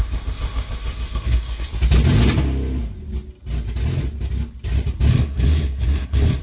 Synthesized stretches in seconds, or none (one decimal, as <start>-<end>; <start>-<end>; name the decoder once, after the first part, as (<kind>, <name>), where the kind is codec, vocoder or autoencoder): 0.0-1.7 (codec, SNAC); 5.1-6.4